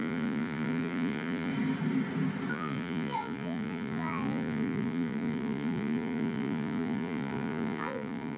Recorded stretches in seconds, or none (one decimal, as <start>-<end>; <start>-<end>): 1.5-2.5